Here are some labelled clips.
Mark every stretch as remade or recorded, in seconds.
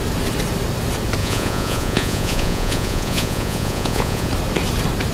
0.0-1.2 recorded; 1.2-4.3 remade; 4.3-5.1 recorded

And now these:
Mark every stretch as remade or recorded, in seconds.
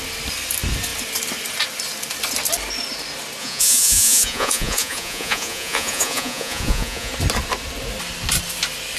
0.0-3.4 recorded; 3.4-7.1 remade; 7.1-9.0 recorded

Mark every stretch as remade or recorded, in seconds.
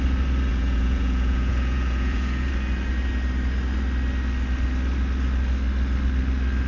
0.0-0.5 recorded; 0.5-2.5 remade; 2.5-6.7 recorded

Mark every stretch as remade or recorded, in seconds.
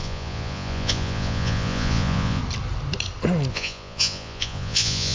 0.0-2.4 remade; 2.4-3.5 recorded; 3.5-5.1 remade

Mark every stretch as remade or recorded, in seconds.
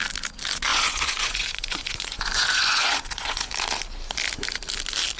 0.0-0.7 recorded; 0.7-3.5 remade; 3.5-5.2 recorded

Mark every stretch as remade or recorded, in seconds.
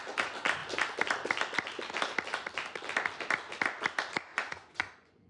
0.0-4.3 recorded; 4.3-5.3 remade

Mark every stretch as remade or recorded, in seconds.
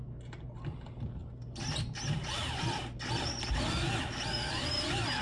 0.0-5.2 recorded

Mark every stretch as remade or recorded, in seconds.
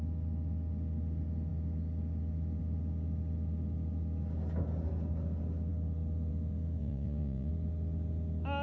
0.0-6.8 recorded; 6.8-7.5 remade; 7.5-8.6 recorded